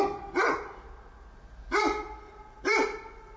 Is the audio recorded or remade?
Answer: recorded